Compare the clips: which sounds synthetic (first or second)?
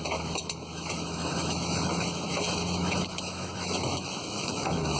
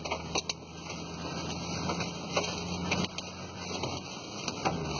first